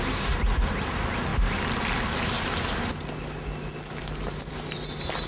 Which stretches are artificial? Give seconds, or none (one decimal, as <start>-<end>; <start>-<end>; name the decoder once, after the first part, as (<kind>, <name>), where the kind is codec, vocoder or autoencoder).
none